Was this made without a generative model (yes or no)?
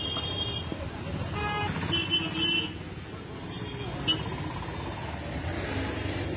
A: yes